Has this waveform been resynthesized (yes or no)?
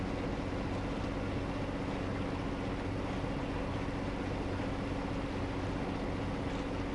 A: no